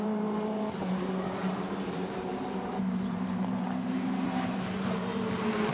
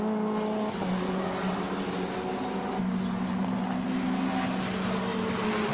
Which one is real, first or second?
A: second